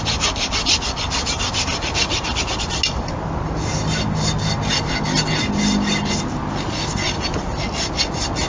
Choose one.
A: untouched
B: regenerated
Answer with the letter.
A